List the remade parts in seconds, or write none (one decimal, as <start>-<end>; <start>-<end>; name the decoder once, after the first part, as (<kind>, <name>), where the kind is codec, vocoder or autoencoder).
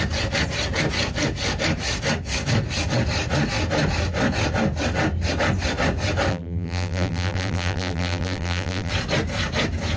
6.3-8.9 (vocoder, BigVGAN v2)